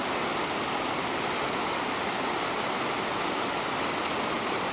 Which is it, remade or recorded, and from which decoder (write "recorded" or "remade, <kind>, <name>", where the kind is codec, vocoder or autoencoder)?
recorded